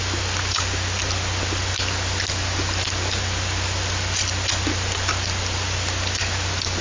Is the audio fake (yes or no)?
no